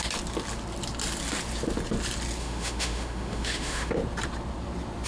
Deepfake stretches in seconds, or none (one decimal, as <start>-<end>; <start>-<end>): 2.4-3.9